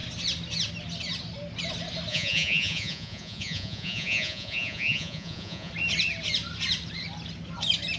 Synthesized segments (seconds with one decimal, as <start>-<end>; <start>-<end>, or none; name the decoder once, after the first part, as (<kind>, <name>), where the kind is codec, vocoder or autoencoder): 2.1-5.7 (vocoder, Vocos)